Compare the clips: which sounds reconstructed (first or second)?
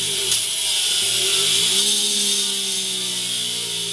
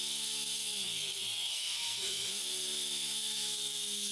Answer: second